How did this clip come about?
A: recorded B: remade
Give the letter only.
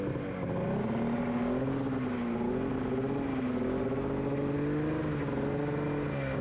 A